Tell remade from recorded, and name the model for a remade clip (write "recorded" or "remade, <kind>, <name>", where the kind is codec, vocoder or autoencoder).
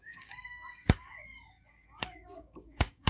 remade, codec, DAC